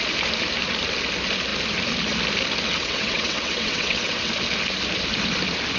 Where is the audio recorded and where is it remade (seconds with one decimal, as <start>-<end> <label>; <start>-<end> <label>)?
0.0-2.8 recorded; 2.8-4.3 remade; 4.3-5.8 recorded